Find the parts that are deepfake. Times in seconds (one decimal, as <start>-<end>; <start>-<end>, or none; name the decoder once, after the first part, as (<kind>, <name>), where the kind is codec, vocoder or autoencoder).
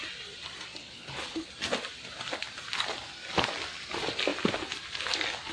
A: 0.8-1.5 (codec, HILCodec)